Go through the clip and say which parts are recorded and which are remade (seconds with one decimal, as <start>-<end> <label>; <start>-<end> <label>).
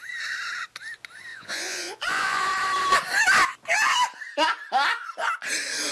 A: 0.0-1.3 recorded; 1.3-2.5 remade; 2.5-5.9 recorded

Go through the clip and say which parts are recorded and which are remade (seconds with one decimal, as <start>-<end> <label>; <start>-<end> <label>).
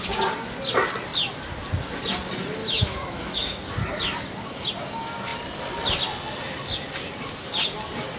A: 0.0-2.6 recorded; 2.6-3.6 remade; 3.6-8.2 recorded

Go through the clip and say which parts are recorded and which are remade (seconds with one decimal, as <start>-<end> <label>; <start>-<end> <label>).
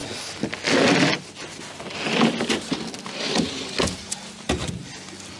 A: 0.0-5.4 recorded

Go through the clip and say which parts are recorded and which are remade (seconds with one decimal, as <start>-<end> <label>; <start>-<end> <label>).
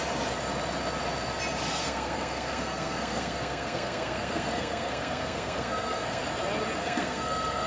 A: 0.0-1.7 recorded; 1.7-6.2 remade; 6.2-6.8 recorded; 6.8-7.7 remade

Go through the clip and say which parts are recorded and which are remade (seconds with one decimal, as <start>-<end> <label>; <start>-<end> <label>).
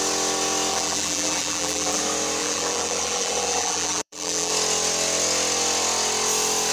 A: 0.0-0.7 recorded; 0.7-2.0 remade; 2.0-2.4 recorded; 2.4-4.5 remade; 4.5-6.7 recorded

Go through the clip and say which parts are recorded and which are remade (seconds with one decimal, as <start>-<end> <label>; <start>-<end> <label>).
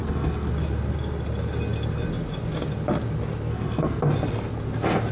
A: 0.0-0.5 remade; 0.5-3.5 recorded; 3.5-4.0 remade; 4.0-5.1 recorded